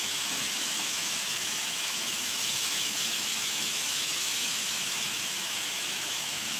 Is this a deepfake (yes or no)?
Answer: yes